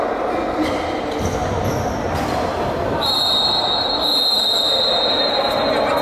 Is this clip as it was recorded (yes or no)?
yes